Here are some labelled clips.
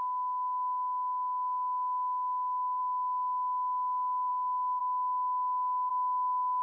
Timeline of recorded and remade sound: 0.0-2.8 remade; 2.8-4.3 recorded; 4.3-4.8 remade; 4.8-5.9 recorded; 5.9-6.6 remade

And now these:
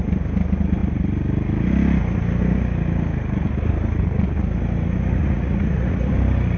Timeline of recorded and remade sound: 0.0-5.2 recorded; 5.2-6.1 remade; 6.1-6.6 recorded